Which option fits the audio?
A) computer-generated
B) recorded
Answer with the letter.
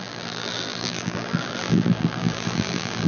A